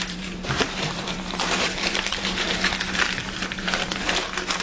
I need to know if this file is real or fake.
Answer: fake